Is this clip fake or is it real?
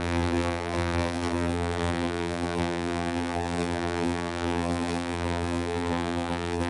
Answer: fake